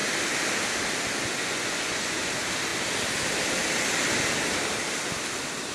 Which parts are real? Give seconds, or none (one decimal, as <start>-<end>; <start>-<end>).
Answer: 0.0-1.4; 2.3-5.7